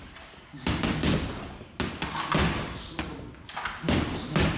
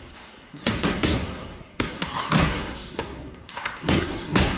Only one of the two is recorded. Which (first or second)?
first